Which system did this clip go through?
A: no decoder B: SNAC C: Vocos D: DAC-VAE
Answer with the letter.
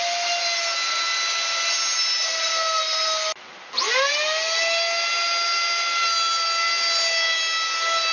A